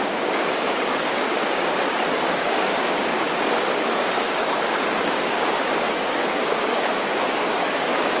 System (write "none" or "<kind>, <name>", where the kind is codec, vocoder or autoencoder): codec, DAC